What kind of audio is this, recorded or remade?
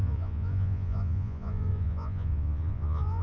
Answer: remade